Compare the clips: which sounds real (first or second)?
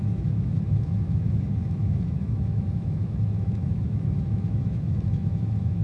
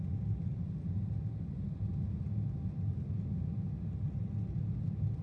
second